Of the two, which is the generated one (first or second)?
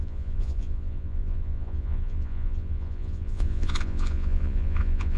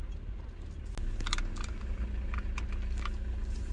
first